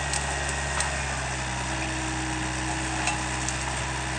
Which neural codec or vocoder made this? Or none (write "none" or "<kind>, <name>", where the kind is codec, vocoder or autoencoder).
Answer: none